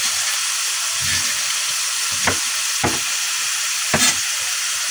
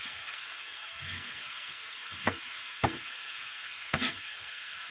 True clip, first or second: first